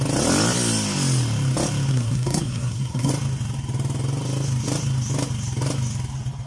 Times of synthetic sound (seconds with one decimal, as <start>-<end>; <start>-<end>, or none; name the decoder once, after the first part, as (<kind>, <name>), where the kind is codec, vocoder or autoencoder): 1.9-3.1 (codec, SNAC)